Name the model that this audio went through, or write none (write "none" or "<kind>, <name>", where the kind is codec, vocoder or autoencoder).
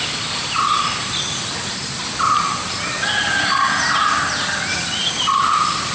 none